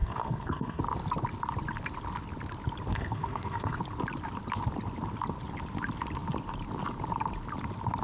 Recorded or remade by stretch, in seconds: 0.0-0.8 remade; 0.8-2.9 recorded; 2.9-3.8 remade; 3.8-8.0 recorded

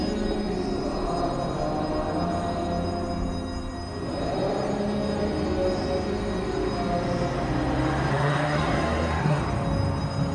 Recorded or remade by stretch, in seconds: 0.0-8.1 recorded; 8.1-9.4 remade; 9.4-10.3 recorded

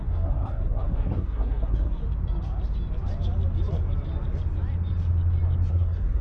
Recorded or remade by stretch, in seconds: 0.0-2.0 remade; 2.0-5.7 recorded; 5.7-6.2 remade

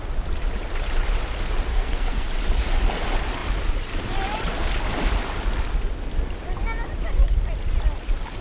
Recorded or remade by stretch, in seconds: 0.0-1.7 recorded; 1.7-2.3 remade; 2.3-8.4 recorded